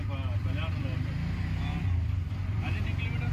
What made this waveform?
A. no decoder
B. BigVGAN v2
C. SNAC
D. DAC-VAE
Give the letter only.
A